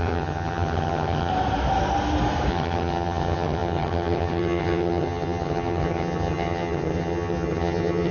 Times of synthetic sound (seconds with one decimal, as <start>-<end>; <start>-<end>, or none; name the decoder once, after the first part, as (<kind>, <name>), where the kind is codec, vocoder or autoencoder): 0.0-1.3 (vocoder, HiFi-GAN); 2.5-8.1

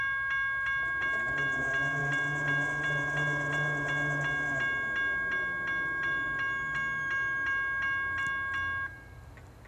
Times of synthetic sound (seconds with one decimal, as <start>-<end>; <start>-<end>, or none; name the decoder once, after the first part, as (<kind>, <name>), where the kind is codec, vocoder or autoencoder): none

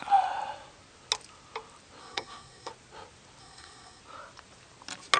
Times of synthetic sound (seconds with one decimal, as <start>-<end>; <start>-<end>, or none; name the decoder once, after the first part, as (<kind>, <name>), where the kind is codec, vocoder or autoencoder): 2.0-2.7 (codec, SNAC); 3.4-4.0

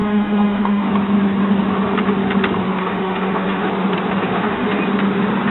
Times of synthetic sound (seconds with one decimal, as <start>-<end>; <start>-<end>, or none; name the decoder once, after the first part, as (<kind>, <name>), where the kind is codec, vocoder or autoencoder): 0.0-0.9 (autoencoder, DAC-VAE); 2.8-3.7; 4.2-4.8

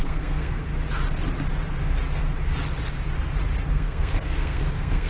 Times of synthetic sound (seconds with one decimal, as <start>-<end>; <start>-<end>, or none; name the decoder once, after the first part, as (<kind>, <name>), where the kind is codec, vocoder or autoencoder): 0.0-0.6 (codec, SNAC); 3.7-5.1

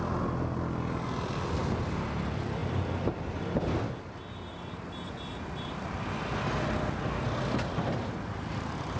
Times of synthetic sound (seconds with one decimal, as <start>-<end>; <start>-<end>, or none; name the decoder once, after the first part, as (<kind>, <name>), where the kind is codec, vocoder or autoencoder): none

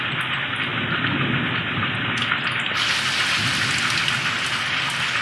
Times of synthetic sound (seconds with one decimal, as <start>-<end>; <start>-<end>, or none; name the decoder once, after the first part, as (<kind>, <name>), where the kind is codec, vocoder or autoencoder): none

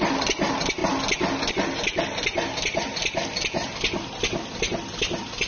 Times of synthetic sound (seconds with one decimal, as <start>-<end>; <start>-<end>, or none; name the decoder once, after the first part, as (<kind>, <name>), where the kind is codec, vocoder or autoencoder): none